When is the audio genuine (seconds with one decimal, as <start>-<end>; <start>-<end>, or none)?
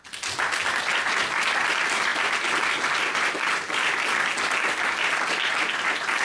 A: 0.0-6.2